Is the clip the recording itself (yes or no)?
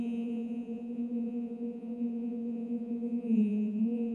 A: no